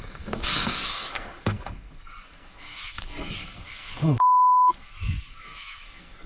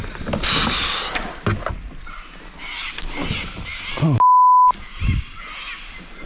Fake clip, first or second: first